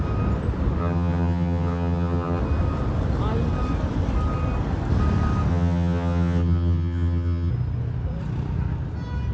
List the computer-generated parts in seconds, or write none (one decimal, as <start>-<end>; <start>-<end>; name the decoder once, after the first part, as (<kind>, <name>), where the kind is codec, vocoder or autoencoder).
0.8-2.4 (vocoder, HiFi-GAN); 5.5-7.5